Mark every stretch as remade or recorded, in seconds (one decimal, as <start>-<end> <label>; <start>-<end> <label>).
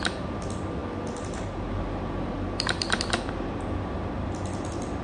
0.0-5.0 recorded